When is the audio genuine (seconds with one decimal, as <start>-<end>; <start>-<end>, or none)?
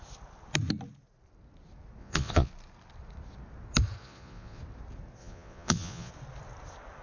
0.0-2.0; 2.5-4.0; 4.6-5.2; 6.1-7.0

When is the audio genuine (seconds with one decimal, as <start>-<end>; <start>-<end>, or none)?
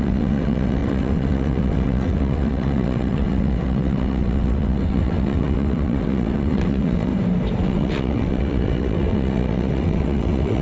7.1-7.6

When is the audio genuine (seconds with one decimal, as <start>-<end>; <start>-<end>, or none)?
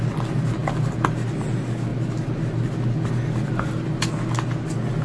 0.0-0.6; 1.3-1.9; 4.1-5.0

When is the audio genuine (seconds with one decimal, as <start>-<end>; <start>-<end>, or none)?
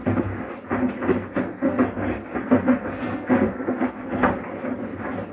0.5-1.1; 4.3-5.3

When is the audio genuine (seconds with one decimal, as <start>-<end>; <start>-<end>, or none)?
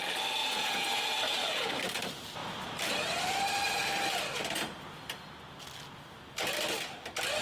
0.0-0.4; 1.7-7.4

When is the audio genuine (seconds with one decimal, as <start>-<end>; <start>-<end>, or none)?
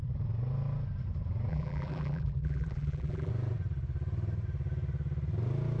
0.0-1.5; 3.3-5.8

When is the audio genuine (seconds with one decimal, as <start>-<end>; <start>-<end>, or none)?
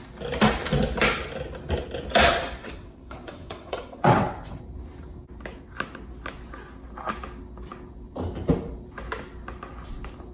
0.0-2.6; 4.6-10.3